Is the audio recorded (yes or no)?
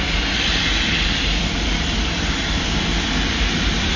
no